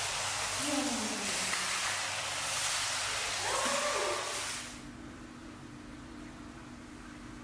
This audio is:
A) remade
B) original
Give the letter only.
B